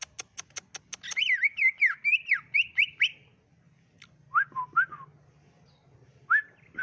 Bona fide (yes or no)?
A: yes